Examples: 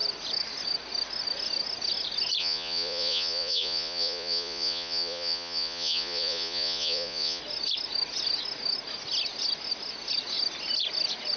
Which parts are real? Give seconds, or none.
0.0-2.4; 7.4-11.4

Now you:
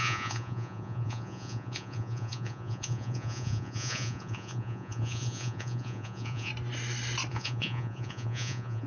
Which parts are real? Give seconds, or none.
6.5-7.3

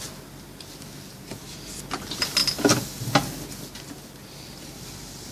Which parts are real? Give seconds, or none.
0.0-5.3

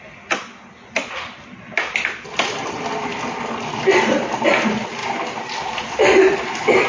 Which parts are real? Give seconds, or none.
0.0-6.9